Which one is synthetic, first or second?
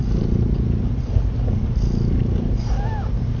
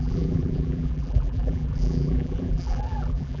second